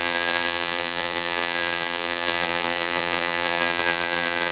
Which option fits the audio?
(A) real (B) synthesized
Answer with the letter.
B